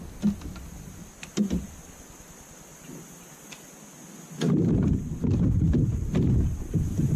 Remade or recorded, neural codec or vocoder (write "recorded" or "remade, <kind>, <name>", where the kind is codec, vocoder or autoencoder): recorded